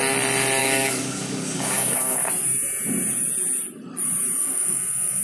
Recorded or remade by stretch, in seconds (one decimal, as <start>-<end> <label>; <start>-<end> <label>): 0.0-0.6 recorded; 0.6-2.3 remade; 2.3-4.4 recorded; 4.4-5.2 remade